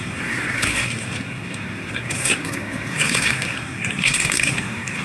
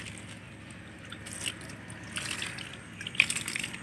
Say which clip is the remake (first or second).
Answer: first